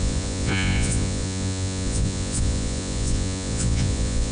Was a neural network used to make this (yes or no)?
yes